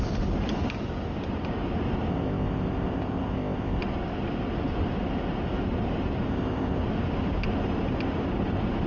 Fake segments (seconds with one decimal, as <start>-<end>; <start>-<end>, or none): 2.1-3.8; 6.3-6.8